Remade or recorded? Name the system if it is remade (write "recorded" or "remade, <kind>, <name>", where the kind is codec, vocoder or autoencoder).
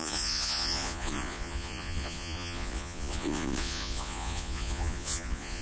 remade, vocoder, Vocos